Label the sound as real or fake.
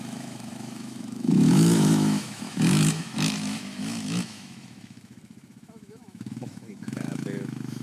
fake